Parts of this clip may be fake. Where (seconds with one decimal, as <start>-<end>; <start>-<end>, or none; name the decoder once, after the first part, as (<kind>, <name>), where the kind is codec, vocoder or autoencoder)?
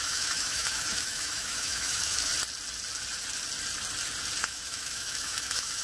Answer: 0.0-2.3 (autoencoder, DAC-VAE); 4.4-5.8